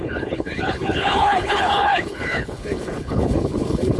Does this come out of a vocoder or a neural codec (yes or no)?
yes